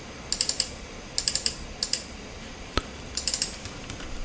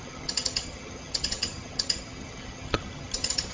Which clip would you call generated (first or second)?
second